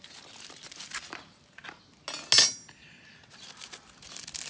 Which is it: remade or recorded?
recorded